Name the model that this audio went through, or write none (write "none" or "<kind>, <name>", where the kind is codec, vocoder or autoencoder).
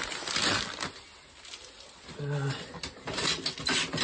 none